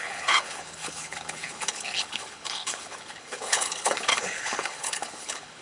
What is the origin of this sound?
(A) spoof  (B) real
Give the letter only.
A